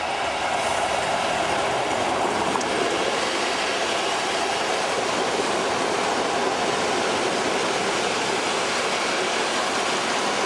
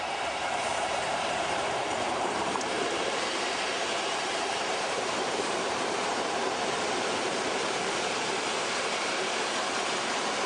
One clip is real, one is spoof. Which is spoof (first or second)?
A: second